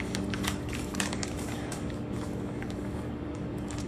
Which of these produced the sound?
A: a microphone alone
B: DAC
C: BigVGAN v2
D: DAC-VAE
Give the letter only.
B